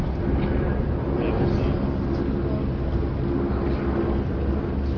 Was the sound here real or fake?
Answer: real